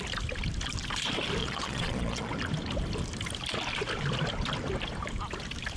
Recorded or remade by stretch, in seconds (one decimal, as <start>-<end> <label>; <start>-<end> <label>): 0.0-1.4 recorded; 1.4-2.3 remade; 2.3-5.8 recorded